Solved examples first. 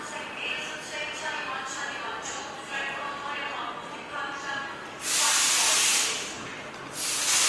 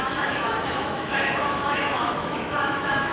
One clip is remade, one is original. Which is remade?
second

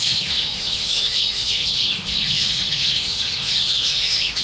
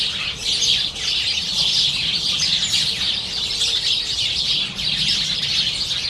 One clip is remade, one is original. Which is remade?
first